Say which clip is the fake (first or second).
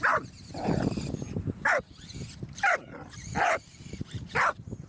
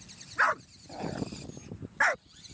first